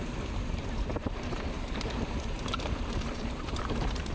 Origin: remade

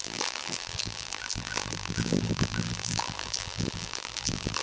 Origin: remade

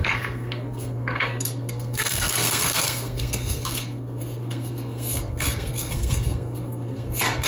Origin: remade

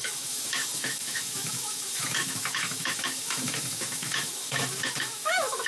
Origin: remade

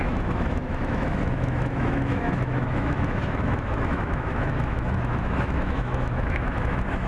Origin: remade